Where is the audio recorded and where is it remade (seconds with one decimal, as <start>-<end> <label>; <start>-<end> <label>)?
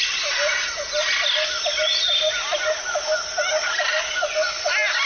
0.0-5.1 recorded